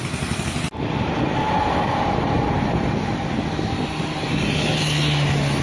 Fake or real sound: real